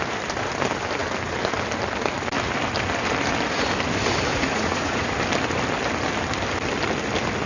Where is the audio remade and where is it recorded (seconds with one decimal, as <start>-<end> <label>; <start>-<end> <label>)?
0.0-4.3 recorded; 4.3-5.1 remade; 5.1-7.5 recorded

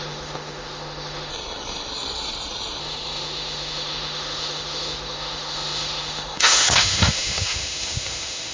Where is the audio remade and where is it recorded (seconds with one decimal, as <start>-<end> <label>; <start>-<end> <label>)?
0.0-1.3 remade; 1.3-2.8 recorded; 2.8-8.5 remade

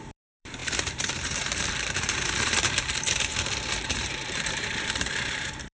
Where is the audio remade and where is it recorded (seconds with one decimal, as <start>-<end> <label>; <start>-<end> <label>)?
0.0-5.8 remade

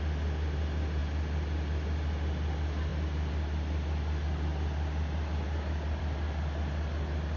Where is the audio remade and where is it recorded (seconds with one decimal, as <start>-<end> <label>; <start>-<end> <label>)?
0.0-7.4 recorded